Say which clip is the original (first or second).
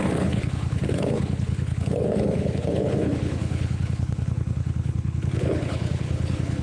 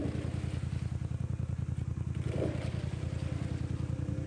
second